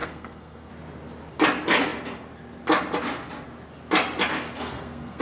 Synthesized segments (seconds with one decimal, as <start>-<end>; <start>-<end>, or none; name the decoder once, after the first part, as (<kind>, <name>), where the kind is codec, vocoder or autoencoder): 0.0-0.7 (codec, SNAC); 4.6-5.2